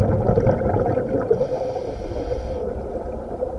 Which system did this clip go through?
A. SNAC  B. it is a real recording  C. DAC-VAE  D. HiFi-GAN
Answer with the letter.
B